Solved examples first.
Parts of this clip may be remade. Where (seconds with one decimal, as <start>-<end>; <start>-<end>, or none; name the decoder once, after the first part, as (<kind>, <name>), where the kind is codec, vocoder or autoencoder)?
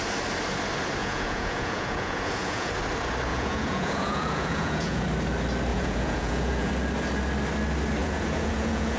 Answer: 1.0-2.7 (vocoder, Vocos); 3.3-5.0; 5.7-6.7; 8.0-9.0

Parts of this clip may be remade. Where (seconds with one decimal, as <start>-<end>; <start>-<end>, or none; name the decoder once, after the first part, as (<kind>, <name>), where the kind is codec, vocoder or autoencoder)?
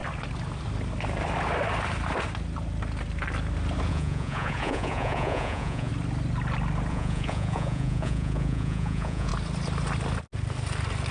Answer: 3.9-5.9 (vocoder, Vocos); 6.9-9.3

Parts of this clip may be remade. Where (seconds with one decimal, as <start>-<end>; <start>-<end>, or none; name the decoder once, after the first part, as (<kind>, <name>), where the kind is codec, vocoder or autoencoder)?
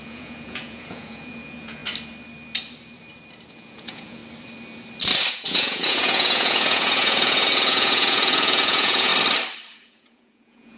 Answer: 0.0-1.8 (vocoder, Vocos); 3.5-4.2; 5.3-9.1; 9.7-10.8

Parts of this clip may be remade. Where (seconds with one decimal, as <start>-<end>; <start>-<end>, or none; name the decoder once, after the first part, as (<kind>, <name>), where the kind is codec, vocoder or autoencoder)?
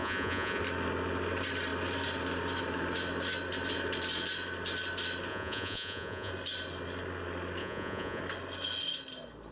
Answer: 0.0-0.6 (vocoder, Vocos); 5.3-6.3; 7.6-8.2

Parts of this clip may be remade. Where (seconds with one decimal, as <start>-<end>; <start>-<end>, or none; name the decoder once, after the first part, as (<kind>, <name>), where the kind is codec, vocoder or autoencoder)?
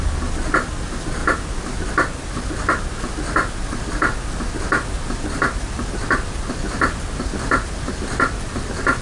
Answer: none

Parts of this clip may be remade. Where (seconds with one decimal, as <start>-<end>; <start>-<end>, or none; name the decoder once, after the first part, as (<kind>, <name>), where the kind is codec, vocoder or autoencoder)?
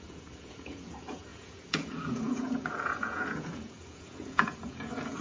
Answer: 0.0-5.2 (vocoder, Vocos)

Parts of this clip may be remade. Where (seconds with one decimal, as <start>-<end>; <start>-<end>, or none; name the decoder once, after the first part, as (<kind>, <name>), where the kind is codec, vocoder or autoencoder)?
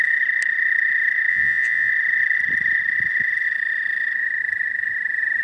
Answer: 1.3-1.9 (vocoder, Vocos)